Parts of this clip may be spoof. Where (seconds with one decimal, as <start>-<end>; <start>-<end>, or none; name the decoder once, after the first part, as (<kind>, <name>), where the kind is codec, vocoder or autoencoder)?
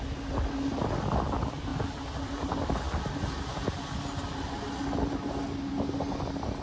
none